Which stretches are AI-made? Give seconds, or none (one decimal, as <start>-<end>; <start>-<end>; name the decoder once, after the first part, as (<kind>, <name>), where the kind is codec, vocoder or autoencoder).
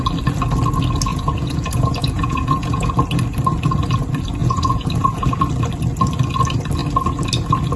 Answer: 1.1-2.9 (vocoder, Vocos); 4.4-5.4